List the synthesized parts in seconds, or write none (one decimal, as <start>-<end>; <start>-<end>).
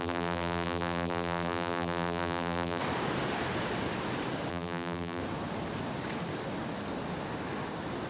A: 0.0-2.8; 4.5-5.2